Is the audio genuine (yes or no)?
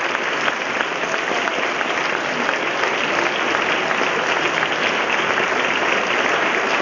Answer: yes